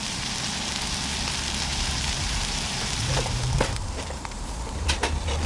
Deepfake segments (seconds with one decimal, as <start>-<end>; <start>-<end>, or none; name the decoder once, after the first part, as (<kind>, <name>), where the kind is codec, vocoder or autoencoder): 1.7-5.0 (vocoder, BigVGAN v2)